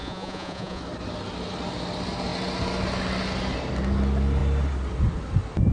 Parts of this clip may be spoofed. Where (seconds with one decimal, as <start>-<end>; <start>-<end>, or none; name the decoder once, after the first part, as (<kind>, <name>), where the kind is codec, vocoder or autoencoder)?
0.0-0.8 (vocoder, Vocos)